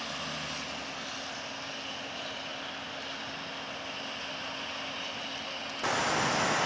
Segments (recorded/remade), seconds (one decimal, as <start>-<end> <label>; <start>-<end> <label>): 0.0-6.7 recorded